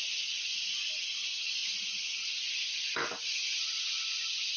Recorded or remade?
recorded